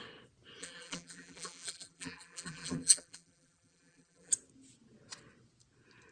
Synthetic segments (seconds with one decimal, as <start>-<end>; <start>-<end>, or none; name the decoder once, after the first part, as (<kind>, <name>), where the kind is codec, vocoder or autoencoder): 0.6-4.3 (vocoder, BigVGAN v2)